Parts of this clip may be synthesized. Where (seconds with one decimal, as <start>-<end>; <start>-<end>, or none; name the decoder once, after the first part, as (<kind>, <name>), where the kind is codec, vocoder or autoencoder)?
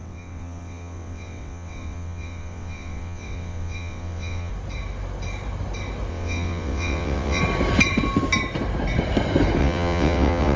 0.0-4.5 (vocoder, WaveNeXt); 6.1-7.4; 9.6-10.6